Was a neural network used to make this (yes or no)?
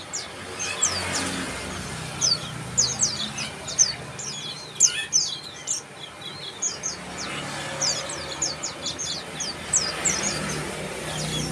no